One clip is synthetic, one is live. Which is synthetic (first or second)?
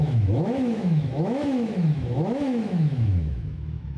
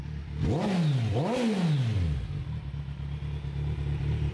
first